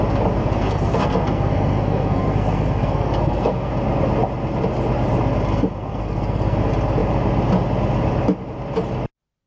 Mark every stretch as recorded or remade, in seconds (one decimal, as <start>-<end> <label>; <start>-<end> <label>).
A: 0.0-0.4 recorded; 0.4-3.7 remade; 3.7-5.5 recorded; 5.5-6.6 remade; 6.6-9.5 recorded

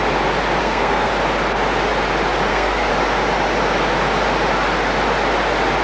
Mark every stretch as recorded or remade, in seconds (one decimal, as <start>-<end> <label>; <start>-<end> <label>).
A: 0.0-0.6 recorded; 0.6-1.1 remade; 1.1-2.5 recorded; 2.5-2.9 remade; 2.9-5.8 recorded

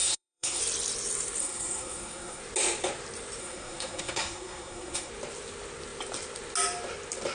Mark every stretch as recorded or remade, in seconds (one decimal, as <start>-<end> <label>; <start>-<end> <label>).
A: 0.0-0.6 remade; 0.6-1.4 recorded; 1.4-2.4 remade; 2.4-3.4 recorded; 3.4-5.1 remade; 5.1-7.3 recorded

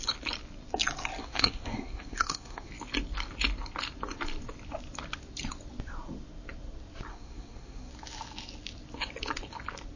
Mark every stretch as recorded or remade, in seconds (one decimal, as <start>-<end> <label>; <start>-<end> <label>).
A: 0.0-1.2 recorded; 1.2-2.7 remade; 2.7-7.1 recorded; 7.1-7.9 remade; 7.9-10.0 recorded

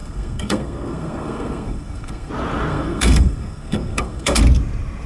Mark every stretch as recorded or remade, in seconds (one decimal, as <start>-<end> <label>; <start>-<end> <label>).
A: 0.0-2.3 remade; 2.3-2.7 recorded; 2.7-4.4 remade; 4.4-5.1 recorded

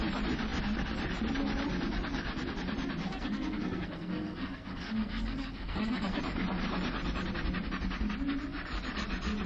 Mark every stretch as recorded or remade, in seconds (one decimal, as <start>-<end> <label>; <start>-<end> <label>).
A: 0.0-3.0 recorded; 3.0-6.2 remade; 6.2-9.5 recorded